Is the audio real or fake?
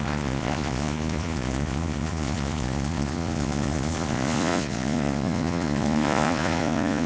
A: fake